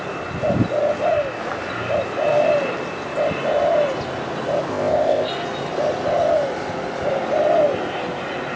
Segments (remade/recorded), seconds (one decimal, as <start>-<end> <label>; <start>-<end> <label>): 0.0-4.7 recorded; 4.7-5.3 remade; 5.3-8.6 recorded